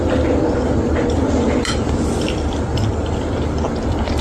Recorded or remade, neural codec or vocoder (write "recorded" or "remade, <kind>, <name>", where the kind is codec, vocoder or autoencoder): recorded